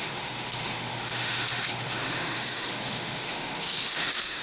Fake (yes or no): yes